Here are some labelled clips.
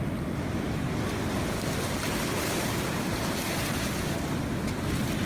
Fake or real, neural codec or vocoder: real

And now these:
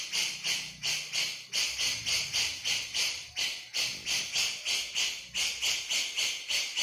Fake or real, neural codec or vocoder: real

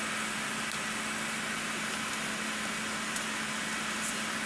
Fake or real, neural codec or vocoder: real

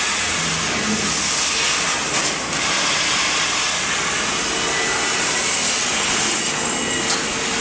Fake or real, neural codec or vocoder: real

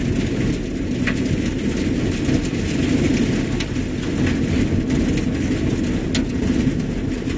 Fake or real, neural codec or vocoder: real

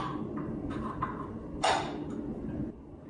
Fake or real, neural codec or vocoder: real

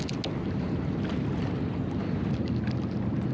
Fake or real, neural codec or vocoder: real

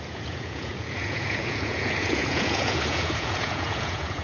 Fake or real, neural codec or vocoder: fake, vocoder, Vocos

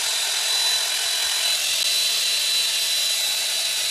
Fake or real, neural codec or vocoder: real